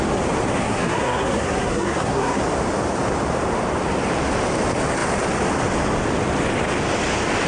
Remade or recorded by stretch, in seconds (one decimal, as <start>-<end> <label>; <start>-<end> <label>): 0.0-0.6 recorded; 0.6-2.4 remade; 2.4-7.5 recorded